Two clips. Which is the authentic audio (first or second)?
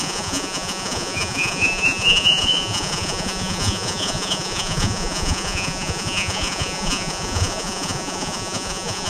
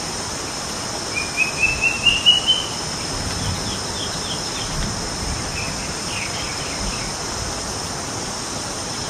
second